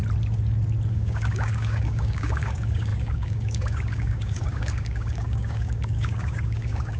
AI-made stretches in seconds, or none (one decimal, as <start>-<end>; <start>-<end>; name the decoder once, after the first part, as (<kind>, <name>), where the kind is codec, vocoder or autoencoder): 0.9-7.0 (codec, DAC)

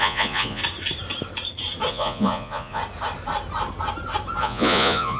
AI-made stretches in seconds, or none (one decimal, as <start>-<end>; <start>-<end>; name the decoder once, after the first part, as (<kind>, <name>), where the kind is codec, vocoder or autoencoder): 0.0-0.6 (vocoder, Vocos); 1.9-2.8; 4.4-5.2

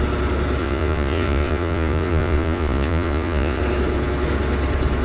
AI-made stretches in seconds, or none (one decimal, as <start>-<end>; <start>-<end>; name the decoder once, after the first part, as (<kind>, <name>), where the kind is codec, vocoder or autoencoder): 0.6-3.6 (vocoder, Vocos)

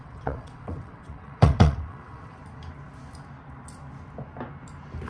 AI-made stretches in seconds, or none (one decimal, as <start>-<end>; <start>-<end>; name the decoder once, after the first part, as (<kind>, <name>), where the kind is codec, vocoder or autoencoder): 0.0-2.4 (vocoder, WaveNeXt)